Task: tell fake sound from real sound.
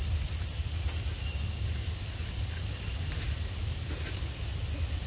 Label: real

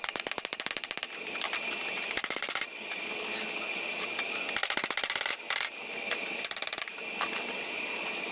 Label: real